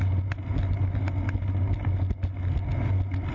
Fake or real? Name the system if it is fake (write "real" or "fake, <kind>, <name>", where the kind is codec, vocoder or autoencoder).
real